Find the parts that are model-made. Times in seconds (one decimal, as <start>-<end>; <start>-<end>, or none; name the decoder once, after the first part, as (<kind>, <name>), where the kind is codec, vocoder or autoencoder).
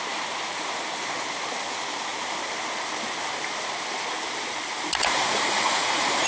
5.0-6.3 (vocoder, Vocos)